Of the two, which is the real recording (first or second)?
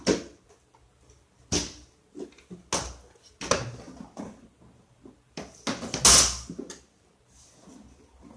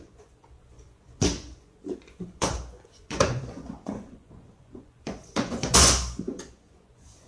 first